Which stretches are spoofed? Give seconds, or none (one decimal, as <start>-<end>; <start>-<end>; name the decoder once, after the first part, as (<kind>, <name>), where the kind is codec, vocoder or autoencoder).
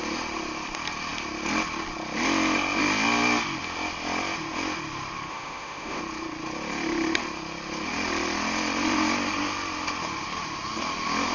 5.3-6.0 (autoencoder, DAC-VAE)